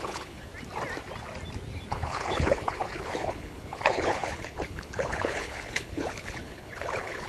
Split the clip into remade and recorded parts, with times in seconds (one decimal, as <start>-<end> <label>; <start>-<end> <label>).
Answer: 0.0-0.5 remade; 0.5-1.9 recorded; 1.9-7.3 remade